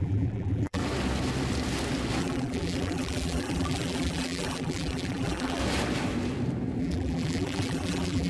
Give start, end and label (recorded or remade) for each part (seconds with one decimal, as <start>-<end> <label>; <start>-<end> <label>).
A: 0.0-0.8 remade; 0.8-2.2 recorded; 2.2-5.6 remade; 5.6-6.8 recorded; 6.8-8.3 remade